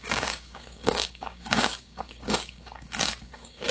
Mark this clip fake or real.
fake